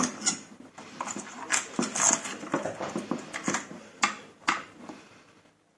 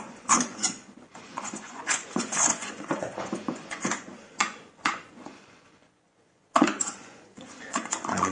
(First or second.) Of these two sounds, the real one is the first